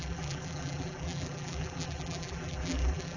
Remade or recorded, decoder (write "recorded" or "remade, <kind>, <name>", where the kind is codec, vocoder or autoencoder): remade, vocoder, BigVGAN v2